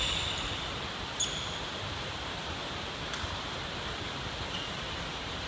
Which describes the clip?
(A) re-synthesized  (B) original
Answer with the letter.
B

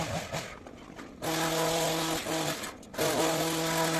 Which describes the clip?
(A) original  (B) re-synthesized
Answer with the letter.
A